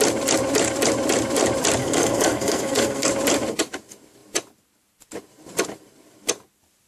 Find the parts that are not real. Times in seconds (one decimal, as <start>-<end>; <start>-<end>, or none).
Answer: 1.8-3.1